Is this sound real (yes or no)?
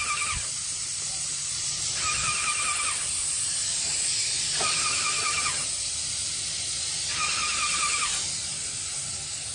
yes